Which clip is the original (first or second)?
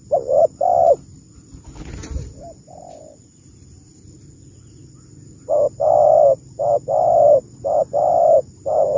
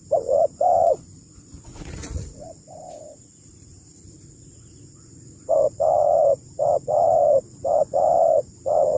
first